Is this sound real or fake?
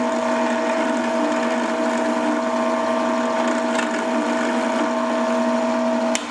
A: real